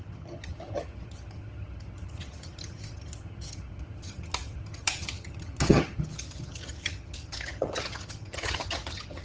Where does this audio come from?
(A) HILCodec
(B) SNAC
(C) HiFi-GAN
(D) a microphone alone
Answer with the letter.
C